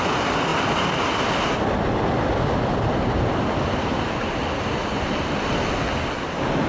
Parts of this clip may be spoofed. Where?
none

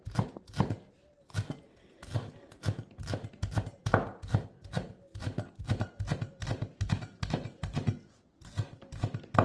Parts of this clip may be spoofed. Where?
none

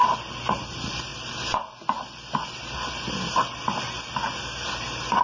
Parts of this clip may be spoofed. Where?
none

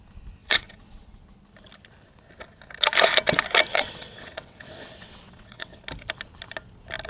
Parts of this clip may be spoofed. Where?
0.4-1.2 (vocoder, WaveNeXt); 3.7-5.8

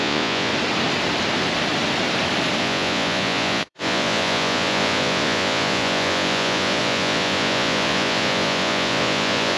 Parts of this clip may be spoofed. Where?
0.0-0.5 (vocoder, Vocos); 2.6-9.6

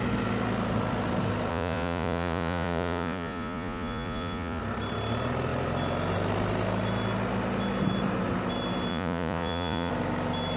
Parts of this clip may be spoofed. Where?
1.5-4.6 (vocoder, Vocos); 8.9-9.9

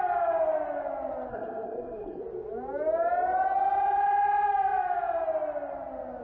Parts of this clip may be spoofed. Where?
1.3-2.2 (codec, SNAC)